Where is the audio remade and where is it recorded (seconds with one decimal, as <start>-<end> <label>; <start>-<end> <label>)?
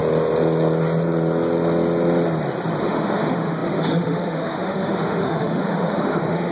0.0-2.8 recorded; 2.8-6.5 remade